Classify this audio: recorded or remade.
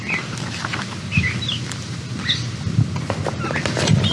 recorded